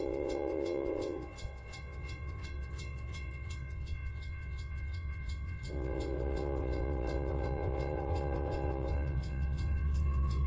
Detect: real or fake fake